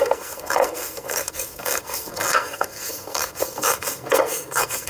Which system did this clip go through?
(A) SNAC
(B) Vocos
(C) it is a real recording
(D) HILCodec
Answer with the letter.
A